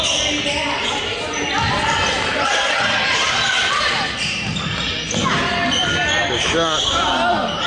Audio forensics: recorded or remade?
recorded